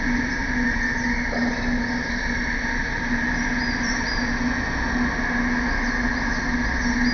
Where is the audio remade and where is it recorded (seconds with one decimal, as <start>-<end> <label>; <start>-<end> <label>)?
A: 0.0-7.1 recorded